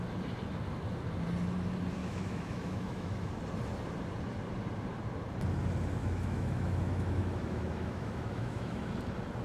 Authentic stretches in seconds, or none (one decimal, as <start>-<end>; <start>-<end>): 0.0-2.0; 3.3-6.0; 8.8-9.4